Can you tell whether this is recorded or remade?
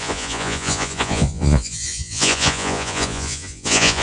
remade